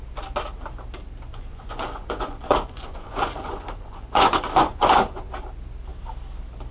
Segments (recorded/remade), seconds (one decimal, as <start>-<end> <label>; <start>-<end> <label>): 0.0-1.3 recorded; 1.3-5.3 remade; 5.3-6.7 recorded